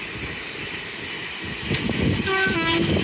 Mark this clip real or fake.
real